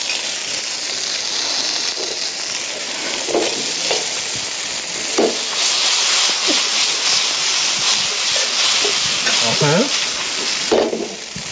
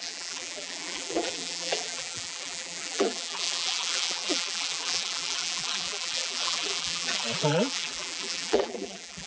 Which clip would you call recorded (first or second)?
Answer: first